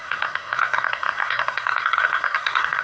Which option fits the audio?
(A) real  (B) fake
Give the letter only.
B